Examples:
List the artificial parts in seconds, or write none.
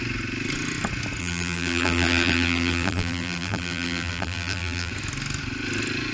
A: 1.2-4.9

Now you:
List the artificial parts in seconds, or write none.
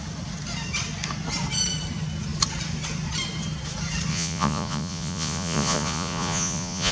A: 4.1-6.9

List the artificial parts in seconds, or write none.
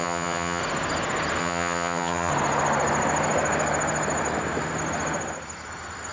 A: 0.0-0.6; 1.4-2.3